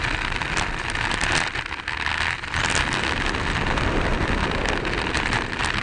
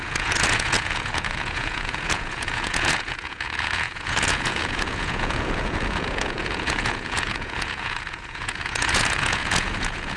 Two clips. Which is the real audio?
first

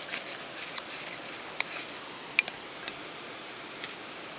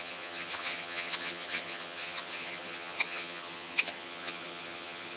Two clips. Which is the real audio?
first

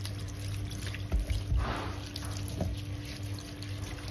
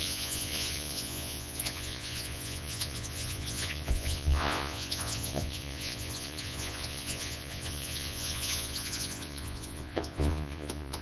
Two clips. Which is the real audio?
first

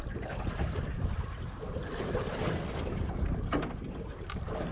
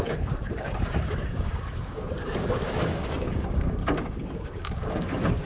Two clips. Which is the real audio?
first